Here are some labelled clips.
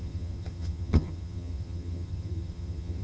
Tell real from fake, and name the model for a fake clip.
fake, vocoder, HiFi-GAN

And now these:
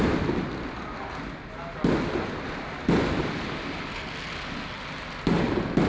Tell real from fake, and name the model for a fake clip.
real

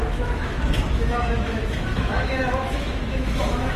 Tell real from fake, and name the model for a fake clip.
fake, autoencoder, DAC-VAE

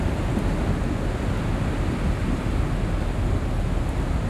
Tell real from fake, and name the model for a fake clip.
real